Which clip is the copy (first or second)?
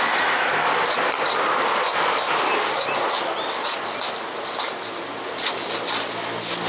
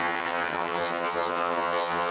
second